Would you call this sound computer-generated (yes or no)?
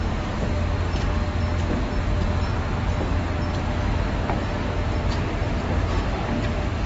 no